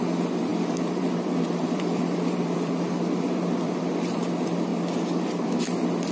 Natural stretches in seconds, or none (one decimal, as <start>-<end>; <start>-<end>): 0.0-0.5; 3.8-6.1